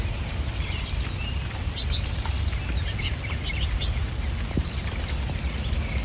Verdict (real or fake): real